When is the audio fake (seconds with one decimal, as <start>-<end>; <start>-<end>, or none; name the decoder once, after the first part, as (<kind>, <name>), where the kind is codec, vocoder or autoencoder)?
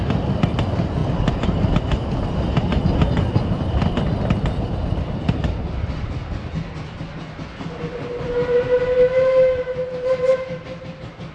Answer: none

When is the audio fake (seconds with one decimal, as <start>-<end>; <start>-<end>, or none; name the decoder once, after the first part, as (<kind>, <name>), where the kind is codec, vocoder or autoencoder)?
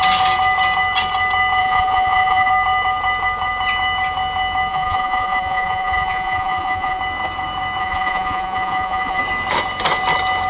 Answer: 1.6-2.5 (vocoder, Vocos); 4.7-7.0; 7.8-9.2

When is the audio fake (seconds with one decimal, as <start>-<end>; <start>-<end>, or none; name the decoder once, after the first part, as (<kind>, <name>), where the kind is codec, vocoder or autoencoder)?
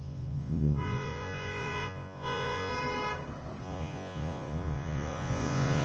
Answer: 0.0-2.7 (vocoder, Vocos); 3.6-5.8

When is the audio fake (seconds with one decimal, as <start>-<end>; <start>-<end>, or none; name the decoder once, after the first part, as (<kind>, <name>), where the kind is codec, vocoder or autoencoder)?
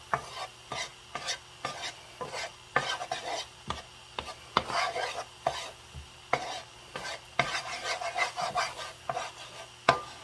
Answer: none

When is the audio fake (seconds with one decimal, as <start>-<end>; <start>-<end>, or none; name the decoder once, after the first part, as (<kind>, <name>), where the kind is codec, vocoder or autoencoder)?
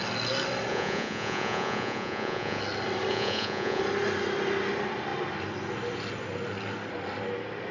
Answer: 0.7-2.6 (vocoder, Vocos); 3.1-3.8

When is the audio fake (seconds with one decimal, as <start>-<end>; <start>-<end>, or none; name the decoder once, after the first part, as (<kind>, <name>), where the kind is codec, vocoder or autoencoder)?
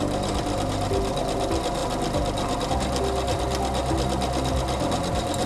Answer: none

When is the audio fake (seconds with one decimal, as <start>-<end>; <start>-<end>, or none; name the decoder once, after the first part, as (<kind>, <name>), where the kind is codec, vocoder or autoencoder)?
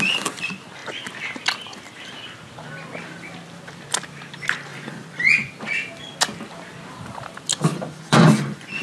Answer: 4.7-5.5 (vocoder, Vocos); 7.7-8.8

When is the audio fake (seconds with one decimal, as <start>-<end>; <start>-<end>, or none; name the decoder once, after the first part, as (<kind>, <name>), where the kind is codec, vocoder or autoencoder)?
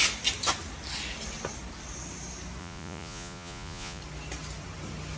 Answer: 2.6-4.0 (vocoder, Vocos)